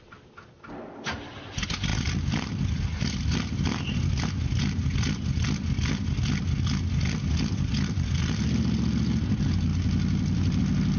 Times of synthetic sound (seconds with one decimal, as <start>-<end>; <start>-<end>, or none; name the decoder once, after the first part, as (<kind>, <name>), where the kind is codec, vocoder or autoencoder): 1.9-3.0 (vocoder, BigVGAN v2); 9.7-10.6